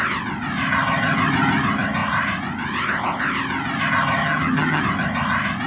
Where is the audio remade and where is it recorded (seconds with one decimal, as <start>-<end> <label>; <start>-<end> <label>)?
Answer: 0.0-4.2 recorded; 4.2-4.8 remade; 4.8-5.7 recorded